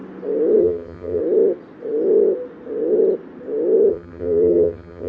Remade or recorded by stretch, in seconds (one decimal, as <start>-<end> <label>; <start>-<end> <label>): 0.0-0.6 recorded; 0.6-1.2 remade; 1.2-3.9 recorded; 3.9-5.1 remade